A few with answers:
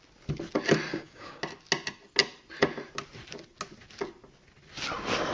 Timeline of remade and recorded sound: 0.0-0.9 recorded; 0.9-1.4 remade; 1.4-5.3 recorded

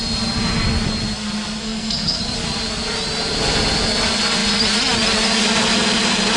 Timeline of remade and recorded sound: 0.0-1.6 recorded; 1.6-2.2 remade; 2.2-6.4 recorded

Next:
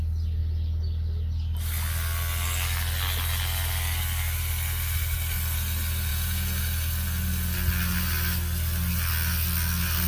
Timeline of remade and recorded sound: 0.0-6.1 recorded; 6.1-6.6 remade; 6.6-10.1 recorded